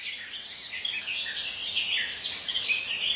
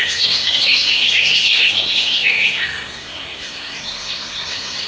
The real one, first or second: first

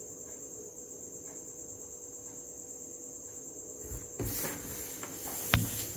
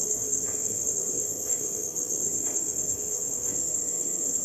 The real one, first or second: first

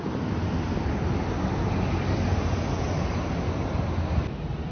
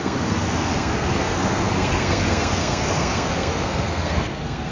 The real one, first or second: first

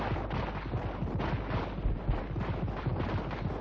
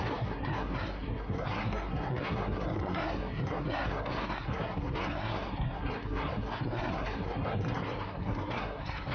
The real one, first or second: first